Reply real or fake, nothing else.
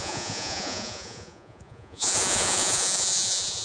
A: fake